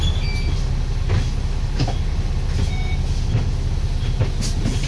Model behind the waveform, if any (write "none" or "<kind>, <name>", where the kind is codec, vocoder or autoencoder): none